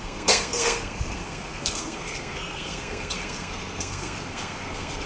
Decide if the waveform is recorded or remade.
remade